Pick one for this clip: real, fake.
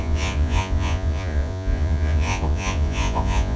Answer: fake